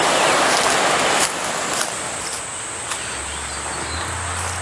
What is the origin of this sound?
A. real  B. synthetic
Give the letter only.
A